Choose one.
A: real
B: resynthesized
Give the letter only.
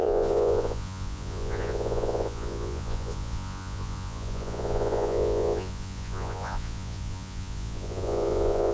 B